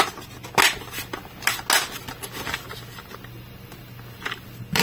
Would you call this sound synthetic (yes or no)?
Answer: no